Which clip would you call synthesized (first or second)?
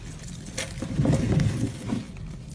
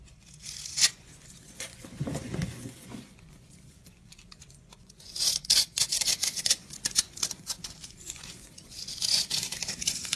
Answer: second